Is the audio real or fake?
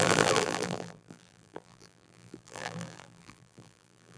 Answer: fake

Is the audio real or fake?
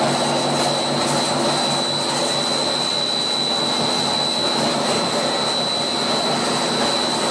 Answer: real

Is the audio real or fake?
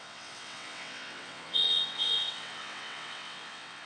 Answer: fake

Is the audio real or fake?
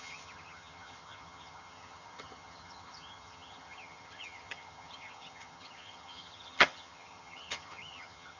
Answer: fake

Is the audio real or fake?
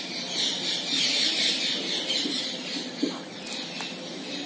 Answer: real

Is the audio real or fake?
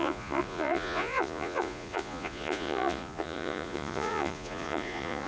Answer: fake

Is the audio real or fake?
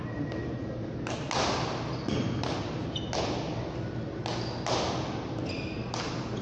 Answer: real